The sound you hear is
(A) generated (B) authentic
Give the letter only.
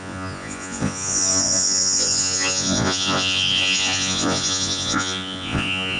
A